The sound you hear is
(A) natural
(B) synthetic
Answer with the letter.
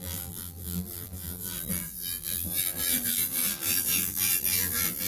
B